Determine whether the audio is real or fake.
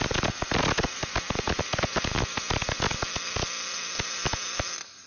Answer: real